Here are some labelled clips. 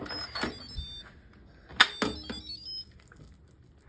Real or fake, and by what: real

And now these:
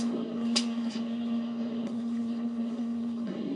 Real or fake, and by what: fake, codec, SNAC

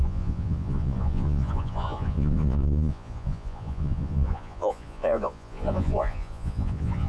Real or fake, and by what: fake, vocoder, Vocos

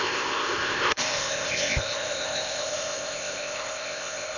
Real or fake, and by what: fake, codec, ZipCodec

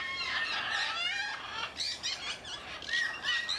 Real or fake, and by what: real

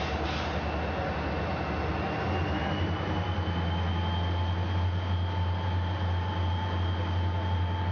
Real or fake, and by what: real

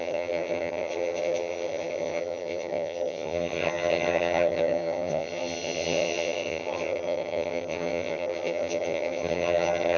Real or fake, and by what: fake, vocoder, HiFi-GAN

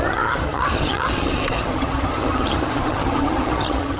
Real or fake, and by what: fake, vocoder, HiFi-GAN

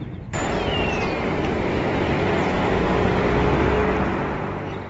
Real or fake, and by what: real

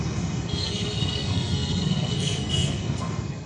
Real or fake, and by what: fake, codec, SNAC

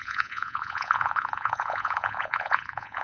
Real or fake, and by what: fake, vocoder, Vocos